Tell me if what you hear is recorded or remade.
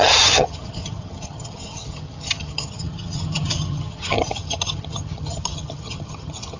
remade